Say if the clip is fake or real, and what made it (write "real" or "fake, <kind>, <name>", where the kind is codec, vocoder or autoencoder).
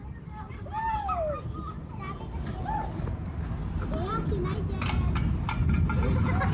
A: real